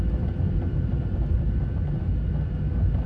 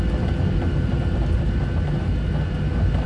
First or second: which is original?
second